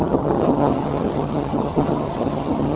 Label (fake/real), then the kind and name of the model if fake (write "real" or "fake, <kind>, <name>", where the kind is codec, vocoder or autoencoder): fake, vocoder, HiFi-GAN